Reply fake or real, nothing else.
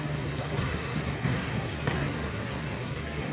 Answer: fake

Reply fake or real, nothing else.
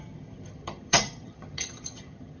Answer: fake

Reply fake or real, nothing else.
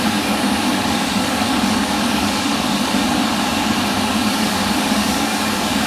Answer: fake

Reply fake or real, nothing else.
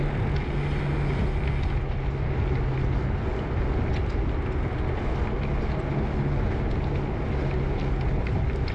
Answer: real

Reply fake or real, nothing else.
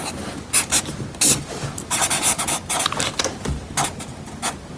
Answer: real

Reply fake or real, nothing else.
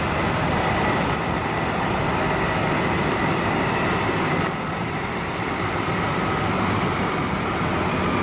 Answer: real